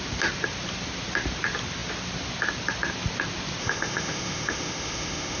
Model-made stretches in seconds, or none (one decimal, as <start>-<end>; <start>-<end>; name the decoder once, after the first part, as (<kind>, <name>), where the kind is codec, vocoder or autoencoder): 3.6-5.4 (autoencoder, DAC-VAE)